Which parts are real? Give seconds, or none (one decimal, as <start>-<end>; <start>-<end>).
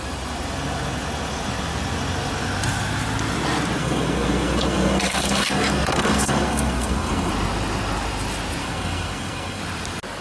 0.0-3.8; 7.3-8.6; 9.6-10.2